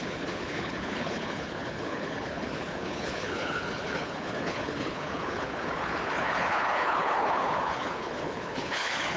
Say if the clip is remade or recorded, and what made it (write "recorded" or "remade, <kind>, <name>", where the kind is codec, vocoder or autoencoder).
remade, codec, HILCodec